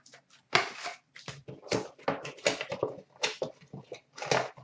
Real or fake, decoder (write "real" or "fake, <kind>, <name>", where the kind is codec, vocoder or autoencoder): real